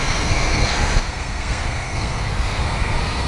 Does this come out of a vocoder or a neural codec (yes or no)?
yes